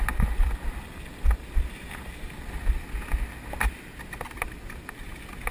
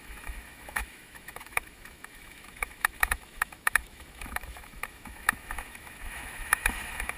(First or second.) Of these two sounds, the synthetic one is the second